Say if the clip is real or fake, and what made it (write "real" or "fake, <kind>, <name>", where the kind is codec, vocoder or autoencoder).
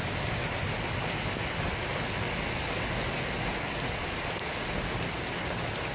real